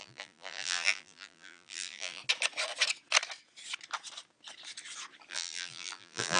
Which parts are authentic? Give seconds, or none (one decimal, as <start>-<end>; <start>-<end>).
2.2-5.3